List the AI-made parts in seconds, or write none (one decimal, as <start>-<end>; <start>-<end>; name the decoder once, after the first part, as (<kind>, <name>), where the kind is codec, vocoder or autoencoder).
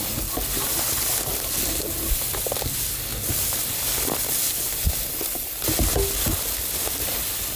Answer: 3.1-7.6 (vocoder, BigVGAN v2)